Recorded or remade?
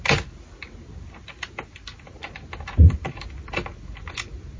recorded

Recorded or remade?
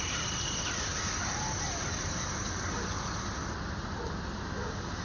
recorded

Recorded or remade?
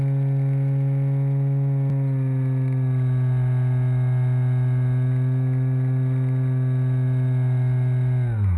recorded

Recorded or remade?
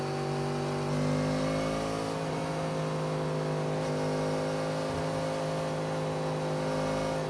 recorded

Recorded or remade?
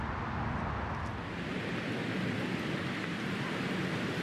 remade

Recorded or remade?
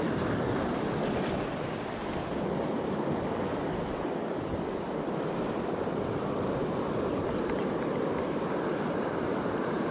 remade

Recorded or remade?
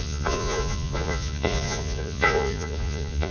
remade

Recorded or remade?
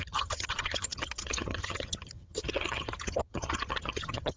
remade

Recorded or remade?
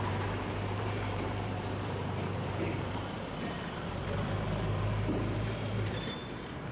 remade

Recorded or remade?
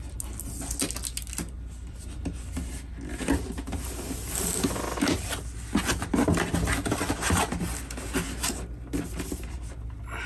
recorded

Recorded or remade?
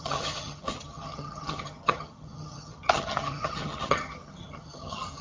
remade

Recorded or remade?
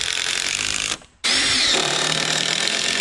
remade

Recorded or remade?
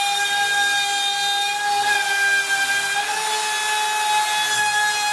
recorded